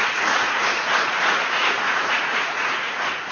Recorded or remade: remade